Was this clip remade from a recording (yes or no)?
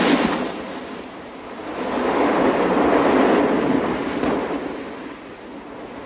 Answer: no